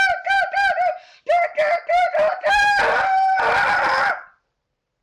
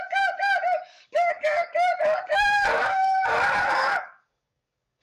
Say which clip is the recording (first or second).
first